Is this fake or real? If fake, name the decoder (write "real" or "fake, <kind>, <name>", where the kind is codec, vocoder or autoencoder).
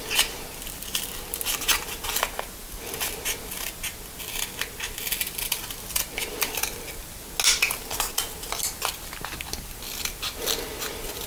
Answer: real